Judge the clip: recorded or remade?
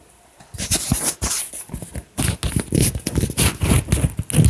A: recorded